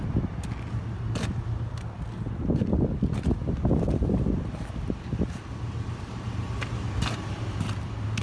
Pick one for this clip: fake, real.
real